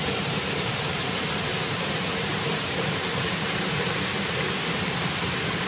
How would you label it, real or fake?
fake